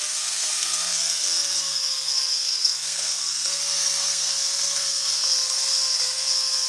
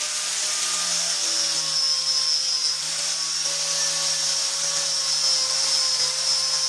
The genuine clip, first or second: second